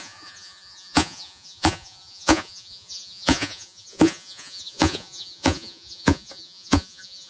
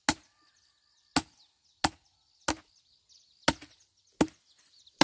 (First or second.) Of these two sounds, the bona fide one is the second